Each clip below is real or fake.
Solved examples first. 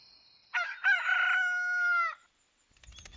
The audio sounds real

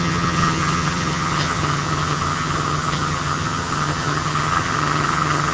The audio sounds fake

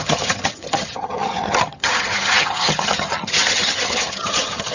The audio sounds fake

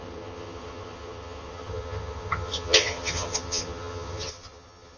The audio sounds fake